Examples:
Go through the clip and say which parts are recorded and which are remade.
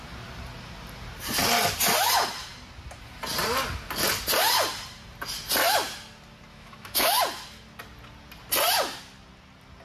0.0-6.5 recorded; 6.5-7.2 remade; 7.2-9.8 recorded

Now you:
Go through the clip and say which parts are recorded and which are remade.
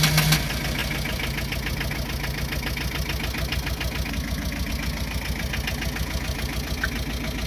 0.0-7.5 recorded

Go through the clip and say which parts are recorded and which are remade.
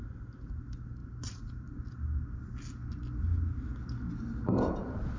0.0-5.2 recorded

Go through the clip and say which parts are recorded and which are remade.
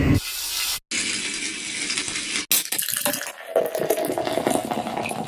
0.0-5.3 recorded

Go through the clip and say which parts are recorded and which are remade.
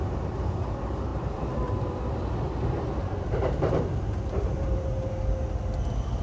0.0-1.1 recorded; 1.1-2.1 remade; 2.1-3.0 recorded; 3.0-5.1 remade; 5.1-6.2 recorded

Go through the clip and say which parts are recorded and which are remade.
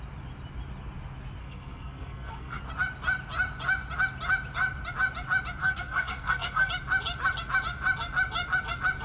0.0-1.4 recorded; 1.4-2.6 remade; 2.6-5.6 recorded; 5.6-6.7 remade; 6.7-9.0 recorded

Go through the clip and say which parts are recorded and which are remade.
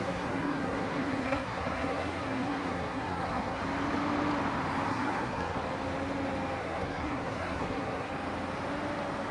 0.0-3.6 remade; 3.6-4.9 recorded; 4.9-5.6 remade; 5.6-6.6 recorded; 6.6-8.1 remade; 8.1-9.3 recorded